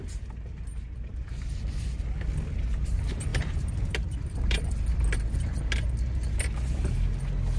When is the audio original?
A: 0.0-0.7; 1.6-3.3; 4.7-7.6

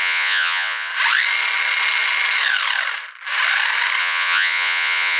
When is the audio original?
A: 0.9-4.0

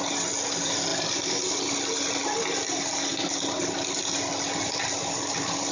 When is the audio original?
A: 0.0-5.7

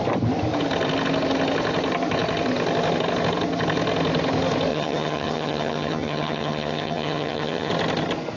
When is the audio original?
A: 0.0-4.7; 7.7-8.4

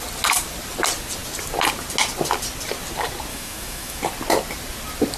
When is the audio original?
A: 0.0-3.3; 4.0-5.2

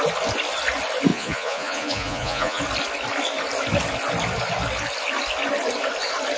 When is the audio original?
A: 0.0-1.1; 2.6-6.4

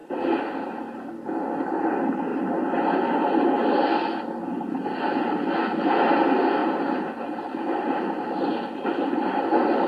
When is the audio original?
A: 0.0-6.6; 9.4-9.9